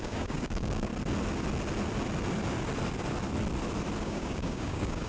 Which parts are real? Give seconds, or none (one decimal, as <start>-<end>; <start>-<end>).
0.9-4.0